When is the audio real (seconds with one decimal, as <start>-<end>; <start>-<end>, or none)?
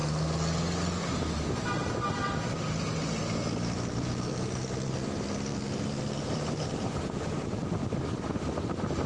0.0-3.2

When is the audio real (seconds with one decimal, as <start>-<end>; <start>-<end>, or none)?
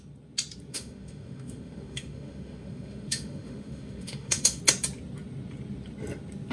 0.0-0.7; 4.6-6.5